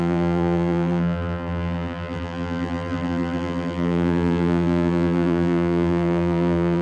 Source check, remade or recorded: remade